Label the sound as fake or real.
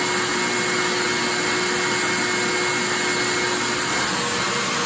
real